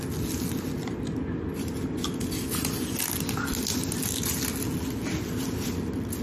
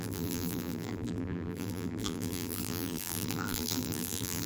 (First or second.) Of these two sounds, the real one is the first